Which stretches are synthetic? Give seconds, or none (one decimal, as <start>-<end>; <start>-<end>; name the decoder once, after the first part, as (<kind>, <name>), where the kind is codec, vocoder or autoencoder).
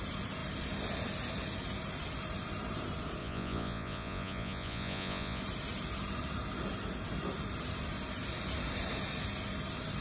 3.2-5.4 (vocoder, Vocos)